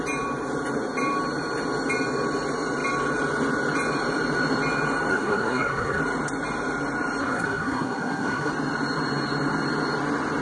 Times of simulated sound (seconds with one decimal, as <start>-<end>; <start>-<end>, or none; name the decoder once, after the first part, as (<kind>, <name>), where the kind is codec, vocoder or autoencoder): 5.1-6.0 (codec, SNAC); 7.2-8.5